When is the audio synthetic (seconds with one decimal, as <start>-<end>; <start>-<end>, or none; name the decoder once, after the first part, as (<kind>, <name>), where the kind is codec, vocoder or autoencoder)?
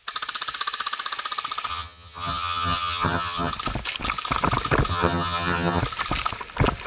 1.7-3.5 (vocoder, HiFi-GAN); 4.9-5.8